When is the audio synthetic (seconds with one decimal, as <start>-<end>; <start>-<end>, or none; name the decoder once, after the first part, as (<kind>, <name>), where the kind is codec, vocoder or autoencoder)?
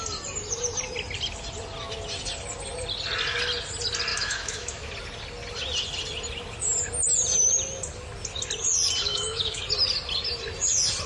4.1-4.9 (autoencoder, DAC-VAE); 9.1-9.6